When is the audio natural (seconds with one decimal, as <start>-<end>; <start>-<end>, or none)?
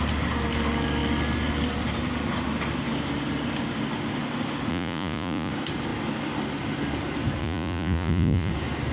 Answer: 0.0-4.7; 5.5-7.4; 8.5-8.9